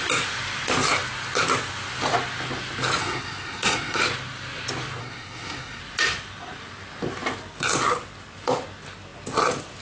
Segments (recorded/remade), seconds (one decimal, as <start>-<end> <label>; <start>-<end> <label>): 0.0-3.0 recorded; 3.0-4.0 remade; 4.0-5.0 recorded; 5.0-5.8 remade; 5.8-9.8 recorded